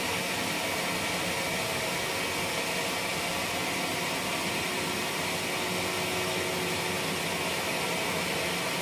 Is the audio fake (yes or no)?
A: no